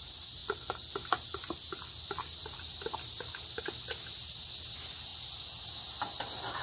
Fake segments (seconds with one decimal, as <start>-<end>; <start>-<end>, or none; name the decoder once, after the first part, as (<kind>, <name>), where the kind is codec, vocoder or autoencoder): none